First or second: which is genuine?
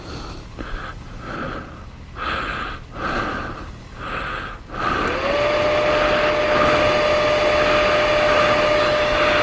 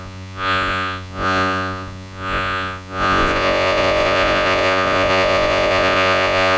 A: first